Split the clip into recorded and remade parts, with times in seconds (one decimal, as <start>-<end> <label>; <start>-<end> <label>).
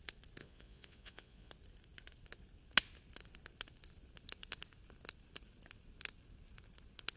0.0-0.4 recorded; 0.4-1.5 remade; 1.5-7.2 recorded